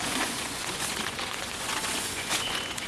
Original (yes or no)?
no